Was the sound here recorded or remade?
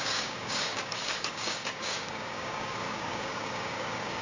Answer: remade